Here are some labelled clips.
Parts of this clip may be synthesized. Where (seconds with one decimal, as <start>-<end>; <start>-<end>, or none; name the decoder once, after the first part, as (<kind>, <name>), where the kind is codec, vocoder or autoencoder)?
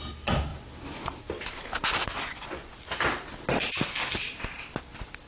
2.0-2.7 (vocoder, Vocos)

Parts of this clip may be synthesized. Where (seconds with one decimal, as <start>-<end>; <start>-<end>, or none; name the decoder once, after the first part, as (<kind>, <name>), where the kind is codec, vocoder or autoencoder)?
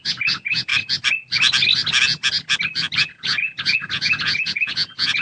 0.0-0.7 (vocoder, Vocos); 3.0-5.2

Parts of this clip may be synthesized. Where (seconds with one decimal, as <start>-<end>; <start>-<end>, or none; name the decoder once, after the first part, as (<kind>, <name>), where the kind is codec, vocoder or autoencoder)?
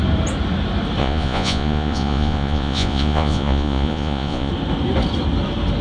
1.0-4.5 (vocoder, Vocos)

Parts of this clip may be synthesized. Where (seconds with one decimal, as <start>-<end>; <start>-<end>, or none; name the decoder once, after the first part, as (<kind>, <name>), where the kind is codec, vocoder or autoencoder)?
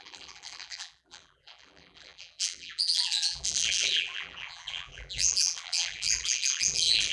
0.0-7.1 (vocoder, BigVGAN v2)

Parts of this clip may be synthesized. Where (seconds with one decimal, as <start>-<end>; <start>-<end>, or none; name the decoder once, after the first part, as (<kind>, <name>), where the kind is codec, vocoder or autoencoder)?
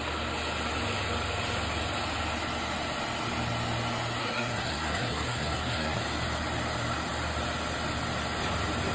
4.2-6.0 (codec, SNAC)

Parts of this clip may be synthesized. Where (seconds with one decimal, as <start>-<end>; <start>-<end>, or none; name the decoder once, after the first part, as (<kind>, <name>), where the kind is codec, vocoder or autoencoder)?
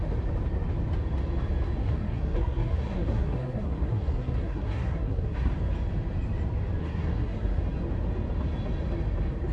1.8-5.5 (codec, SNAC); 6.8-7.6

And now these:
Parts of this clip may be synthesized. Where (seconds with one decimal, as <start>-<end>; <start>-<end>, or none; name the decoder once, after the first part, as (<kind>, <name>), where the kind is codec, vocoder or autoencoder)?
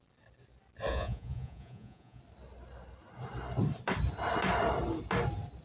0.9-2.2 (vocoder, Vocos)